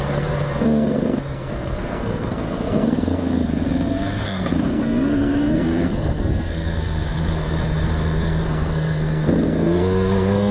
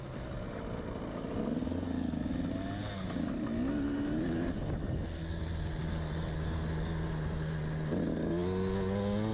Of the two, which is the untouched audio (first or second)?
second